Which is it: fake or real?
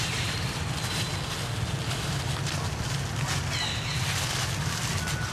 real